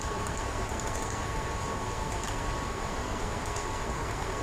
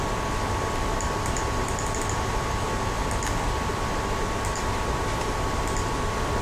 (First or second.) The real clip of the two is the second